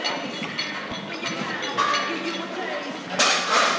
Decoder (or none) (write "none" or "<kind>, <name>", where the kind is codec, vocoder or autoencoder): none